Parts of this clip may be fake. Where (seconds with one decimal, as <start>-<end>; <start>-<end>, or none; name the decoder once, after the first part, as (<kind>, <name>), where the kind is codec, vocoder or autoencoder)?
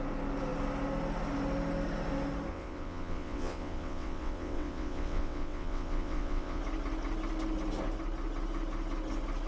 2.5-6.6 (vocoder, WaveNeXt)